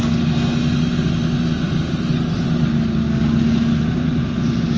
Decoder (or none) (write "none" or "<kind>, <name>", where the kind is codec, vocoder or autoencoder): none